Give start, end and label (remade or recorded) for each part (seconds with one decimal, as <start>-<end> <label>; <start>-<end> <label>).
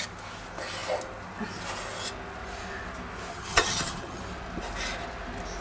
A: 0.0-3.3 recorded; 3.3-4.2 remade; 4.2-5.6 recorded